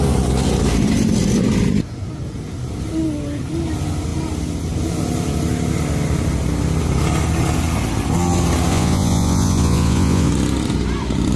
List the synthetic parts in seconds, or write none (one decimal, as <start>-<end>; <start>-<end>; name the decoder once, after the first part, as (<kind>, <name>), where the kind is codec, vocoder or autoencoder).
8.7-10.3 (vocoder, Vocos)